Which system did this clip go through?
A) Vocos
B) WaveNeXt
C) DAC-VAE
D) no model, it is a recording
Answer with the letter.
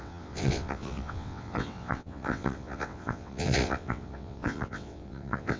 B